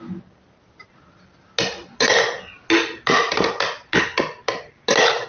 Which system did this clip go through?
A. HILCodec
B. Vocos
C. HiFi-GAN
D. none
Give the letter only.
D